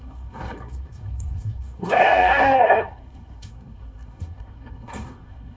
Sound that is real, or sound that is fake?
fake